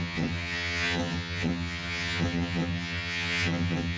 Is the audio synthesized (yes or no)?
yes